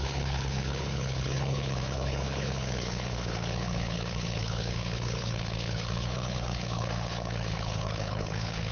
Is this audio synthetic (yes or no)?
yes